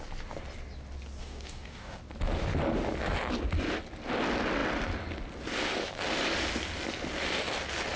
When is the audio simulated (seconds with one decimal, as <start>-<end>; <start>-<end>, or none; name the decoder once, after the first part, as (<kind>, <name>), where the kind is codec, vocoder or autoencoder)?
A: 1.2-2.0 (codec, DAC)